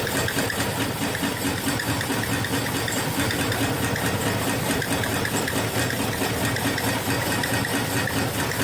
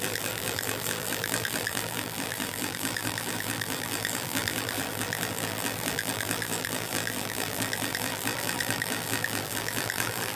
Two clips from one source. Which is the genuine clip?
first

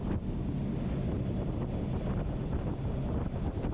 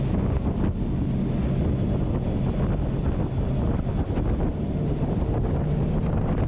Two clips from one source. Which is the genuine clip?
second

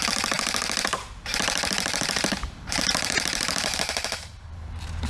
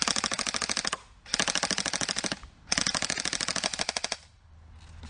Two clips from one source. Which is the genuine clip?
second